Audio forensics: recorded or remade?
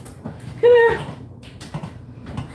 remade